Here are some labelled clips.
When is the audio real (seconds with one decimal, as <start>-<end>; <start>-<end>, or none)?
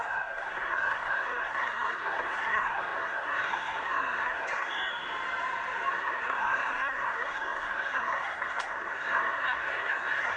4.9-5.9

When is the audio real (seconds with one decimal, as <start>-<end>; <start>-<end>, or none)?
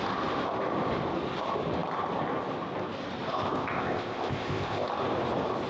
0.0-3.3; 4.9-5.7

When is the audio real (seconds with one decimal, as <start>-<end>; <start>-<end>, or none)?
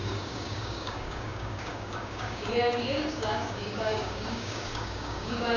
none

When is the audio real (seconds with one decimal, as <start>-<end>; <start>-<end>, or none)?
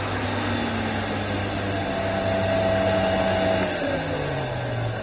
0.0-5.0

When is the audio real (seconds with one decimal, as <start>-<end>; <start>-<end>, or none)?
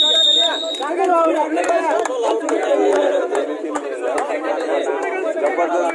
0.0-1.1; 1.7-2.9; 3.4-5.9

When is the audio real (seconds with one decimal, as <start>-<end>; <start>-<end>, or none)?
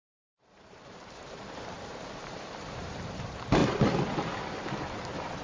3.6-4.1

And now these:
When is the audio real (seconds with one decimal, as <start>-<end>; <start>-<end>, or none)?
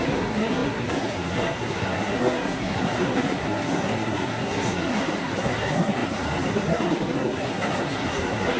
none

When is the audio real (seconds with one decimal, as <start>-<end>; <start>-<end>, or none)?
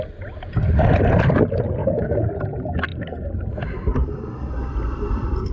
0.0-1.8; 2.3-5.5